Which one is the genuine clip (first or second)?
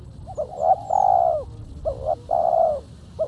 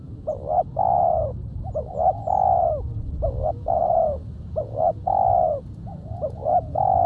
first